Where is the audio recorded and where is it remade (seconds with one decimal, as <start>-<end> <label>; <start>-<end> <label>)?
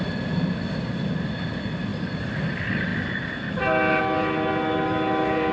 0.0-5.5 recorded